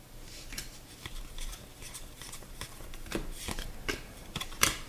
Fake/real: fake